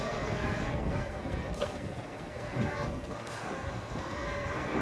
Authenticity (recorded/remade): remade